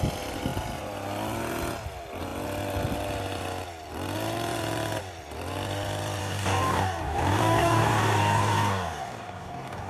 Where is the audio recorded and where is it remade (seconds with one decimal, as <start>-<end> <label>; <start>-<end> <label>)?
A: 0.0-6.2 recorded; 6.2-9.9 remade